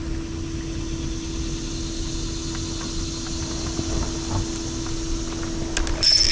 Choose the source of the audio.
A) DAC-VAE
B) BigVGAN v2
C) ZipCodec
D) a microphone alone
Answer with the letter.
D